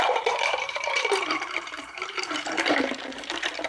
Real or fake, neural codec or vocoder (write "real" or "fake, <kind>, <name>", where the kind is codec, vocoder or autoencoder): fake, vocoder, BigVGAN v2